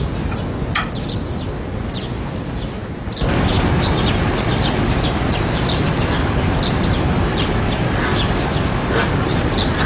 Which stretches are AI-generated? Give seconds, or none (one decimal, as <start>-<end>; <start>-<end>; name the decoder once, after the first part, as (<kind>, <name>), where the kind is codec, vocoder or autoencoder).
none